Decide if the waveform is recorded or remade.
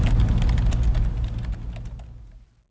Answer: recorded